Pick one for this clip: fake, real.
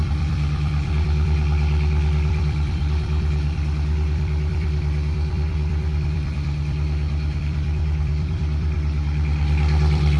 fake